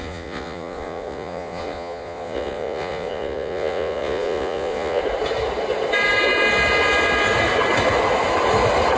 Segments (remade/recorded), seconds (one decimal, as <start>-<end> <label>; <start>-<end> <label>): 0.0-5.0 remade; 5.0-9.0 recorded